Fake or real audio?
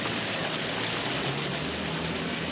real